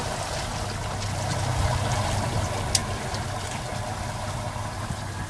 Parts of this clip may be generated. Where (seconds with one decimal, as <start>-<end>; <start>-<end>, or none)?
none